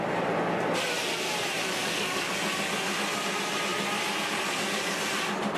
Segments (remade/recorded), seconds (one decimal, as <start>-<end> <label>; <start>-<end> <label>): 0.0-1.8 recorded; 1.8-2.3 remade; 2.3-5.6 recorded